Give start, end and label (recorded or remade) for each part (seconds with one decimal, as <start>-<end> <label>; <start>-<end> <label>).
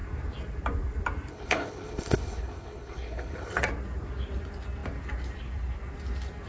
0.0-1.3 recorded; 1.3-3.6 remade; 3.6-6.5 recorded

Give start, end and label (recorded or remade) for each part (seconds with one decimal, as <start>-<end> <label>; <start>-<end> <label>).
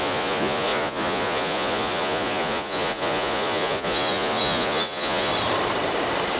0.0-5.3 remade; 5.3-6.4 recorded